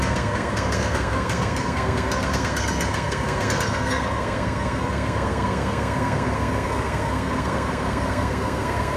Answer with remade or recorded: remade